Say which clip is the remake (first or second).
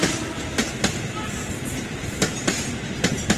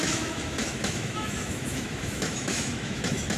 second